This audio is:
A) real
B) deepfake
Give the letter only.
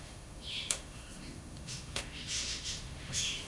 B